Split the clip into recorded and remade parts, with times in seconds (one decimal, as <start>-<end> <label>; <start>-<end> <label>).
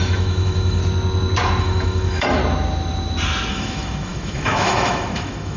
0.0-0.8 remade; 0.8-1.6 recorded; 1.6-2.4 remade; 2.4-3.5 recorded; 3.5-5.6 remade